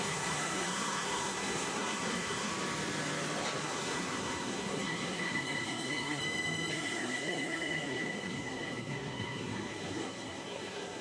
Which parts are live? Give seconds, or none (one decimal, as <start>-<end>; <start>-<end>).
2.5-3.6; 6.2-6.7